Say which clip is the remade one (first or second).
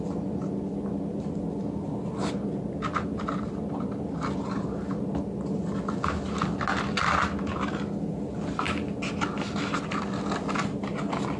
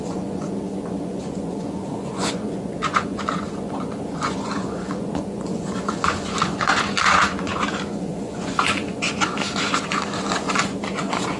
second